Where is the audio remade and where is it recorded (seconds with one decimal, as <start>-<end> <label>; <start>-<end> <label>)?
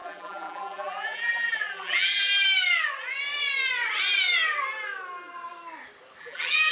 0.0-2.3 remade; 2.3-6.2 recorded; 6.2-6.7 remade